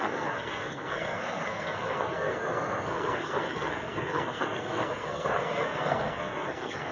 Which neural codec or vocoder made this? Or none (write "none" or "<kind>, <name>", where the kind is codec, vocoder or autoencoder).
codec, SNAC